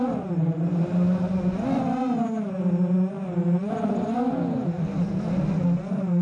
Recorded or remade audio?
recorded